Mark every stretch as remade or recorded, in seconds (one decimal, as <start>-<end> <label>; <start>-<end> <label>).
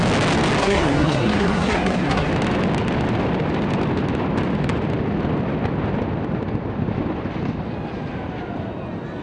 0.0-0.6 recorded; 0.6-2.3 remade; 2.3-9.2 recorded